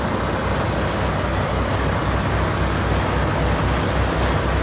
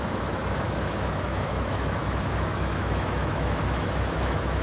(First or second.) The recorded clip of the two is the first